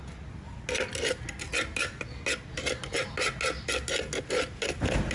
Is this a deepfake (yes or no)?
no